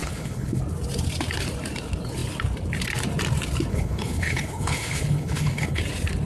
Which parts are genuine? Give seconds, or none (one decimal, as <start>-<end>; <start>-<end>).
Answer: 0.6-3.7; 5.8-6.3